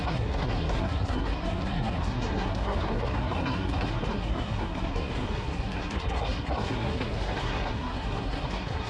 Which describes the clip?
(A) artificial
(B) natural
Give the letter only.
A